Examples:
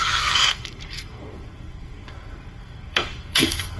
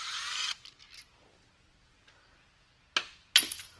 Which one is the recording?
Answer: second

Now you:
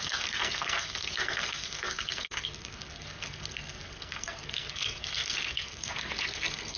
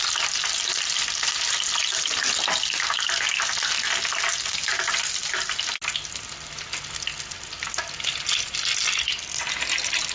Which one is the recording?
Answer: second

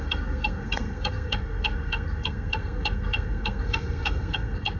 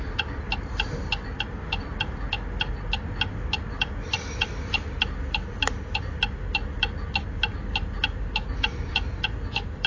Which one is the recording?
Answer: second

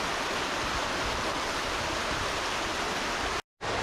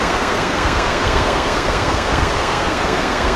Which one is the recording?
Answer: first